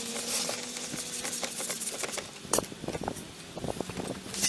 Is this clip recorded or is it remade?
recorded